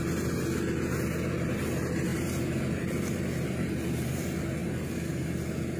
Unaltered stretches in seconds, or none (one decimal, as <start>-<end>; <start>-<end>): 0.0-2.1; 4.1-5.8